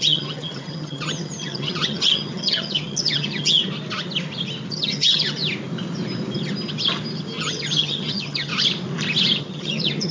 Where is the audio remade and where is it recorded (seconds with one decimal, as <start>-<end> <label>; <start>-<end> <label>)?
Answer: 0.0-3.6 remade; 3.6-4.7 recorded; 4.7-5.4 remade; 5.4-7.4 recorded; 7.4-8.5 remade; 8.5-9.4 recorded; 9.4-10.1 remade